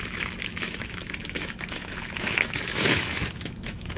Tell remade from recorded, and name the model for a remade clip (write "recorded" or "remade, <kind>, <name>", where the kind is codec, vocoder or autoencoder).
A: remade, autoencoder, DAC-VAE